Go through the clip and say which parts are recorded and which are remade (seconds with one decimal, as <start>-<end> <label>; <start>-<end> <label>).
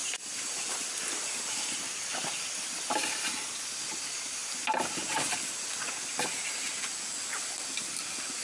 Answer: 0.0-8.4 recorded